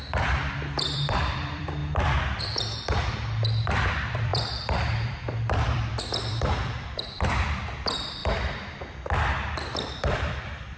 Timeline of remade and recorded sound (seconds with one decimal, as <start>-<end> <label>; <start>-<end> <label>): 0.0-1.8 remade; 1.8-2.4 recorded; 2.4-8.2 remade; 8.2-9.9 recorded; 9.9-10.8 remade